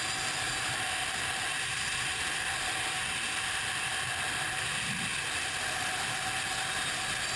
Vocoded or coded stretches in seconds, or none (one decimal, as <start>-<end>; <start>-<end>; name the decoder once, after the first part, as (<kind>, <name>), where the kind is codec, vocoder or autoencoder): none